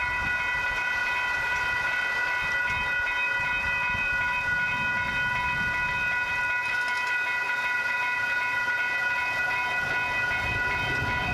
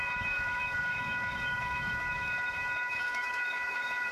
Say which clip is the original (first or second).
first